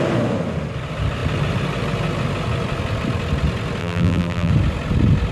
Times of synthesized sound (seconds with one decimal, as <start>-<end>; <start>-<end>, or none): 3.8-4.5